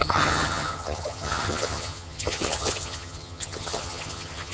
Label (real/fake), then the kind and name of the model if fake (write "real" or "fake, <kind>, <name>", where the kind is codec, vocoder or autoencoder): fake, vocoder, HiFi-GAN